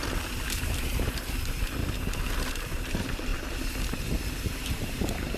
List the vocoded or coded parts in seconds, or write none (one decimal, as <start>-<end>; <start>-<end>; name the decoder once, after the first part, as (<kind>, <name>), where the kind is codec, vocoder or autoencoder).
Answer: 0.0-1.8 (vocoder, BigVGAN v2); 2.5-3.3; 4.7-5.4